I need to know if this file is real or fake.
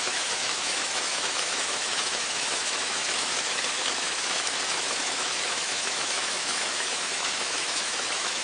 fake